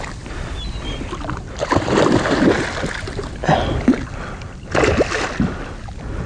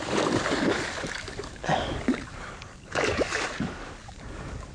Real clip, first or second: first